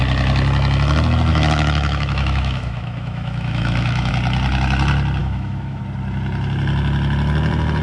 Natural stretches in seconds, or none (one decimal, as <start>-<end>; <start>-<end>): 0.0-1.3; 4.1-5.2; 5.8-7.8